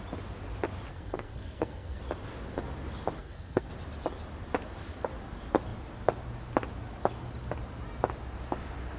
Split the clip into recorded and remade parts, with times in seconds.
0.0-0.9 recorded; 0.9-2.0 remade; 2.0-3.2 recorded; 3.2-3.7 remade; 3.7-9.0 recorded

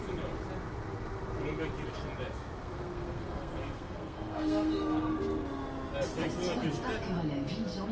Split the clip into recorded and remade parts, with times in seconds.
0.0-2.6 recorded; 2.6-5.2 remade; 5.2-7.9 recorded

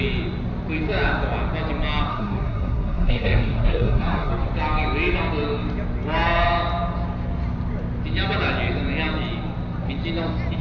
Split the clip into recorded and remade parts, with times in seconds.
0.0-2.1 recorded; 2.1-4.3 remade; 4.3-10.6 recorded

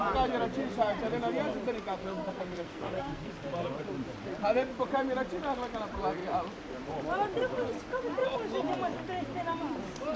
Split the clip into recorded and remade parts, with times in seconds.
0.0-2.0 recorded; 2.0-3.3 remade; 3.3-10.2 recorded

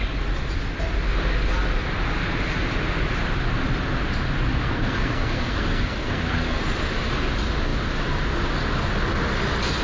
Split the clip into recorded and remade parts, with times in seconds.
0.0-4.5 recorded; 4.5-6.6 remade; 6.6-9.8 recorded

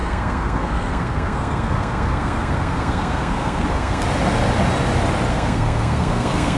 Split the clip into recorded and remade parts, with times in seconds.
0.0-4.0 remade; 4.0-5.3 recorded; 5.3-6.6 remade